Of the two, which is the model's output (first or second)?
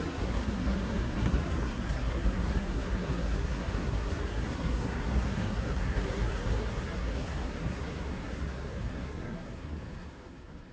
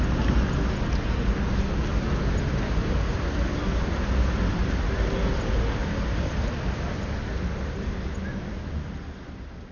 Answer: first